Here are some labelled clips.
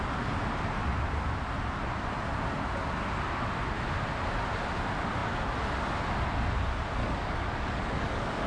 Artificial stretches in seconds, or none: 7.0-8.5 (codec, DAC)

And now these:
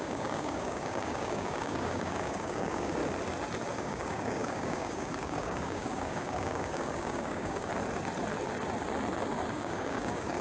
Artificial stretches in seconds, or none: 0.0-3.0 (codec, DAC); 3.8-7.7; 9.5-10.4

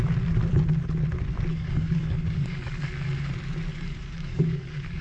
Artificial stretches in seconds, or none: 1.5-3.3 (codec, DAC); 3.7-5.0